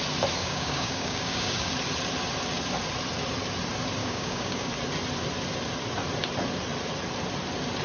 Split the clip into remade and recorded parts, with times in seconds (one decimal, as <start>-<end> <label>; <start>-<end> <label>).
0.0-0.4 recorded; 0.4-1.7 remade; 1.7-4.0 recorded; 4.0-4.7 remade; 4.7-7.8 recorded